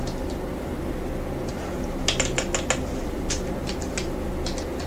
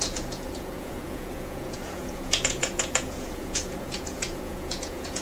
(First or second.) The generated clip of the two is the second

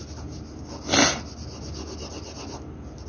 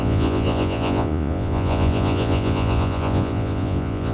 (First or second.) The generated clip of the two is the second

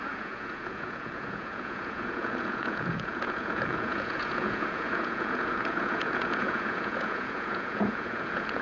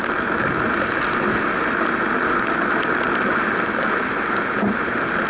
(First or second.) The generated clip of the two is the first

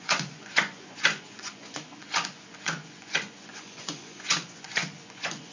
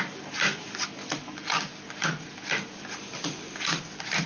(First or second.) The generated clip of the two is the first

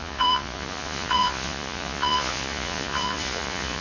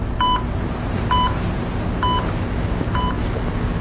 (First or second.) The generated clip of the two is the first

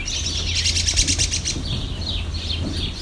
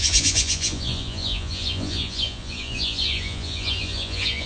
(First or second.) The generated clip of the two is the second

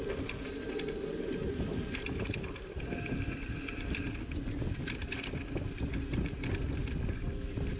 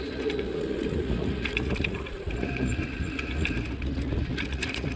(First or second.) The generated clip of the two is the second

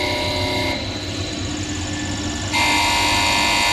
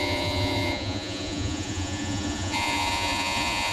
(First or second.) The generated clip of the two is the second